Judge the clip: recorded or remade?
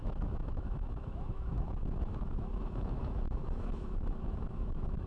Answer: remade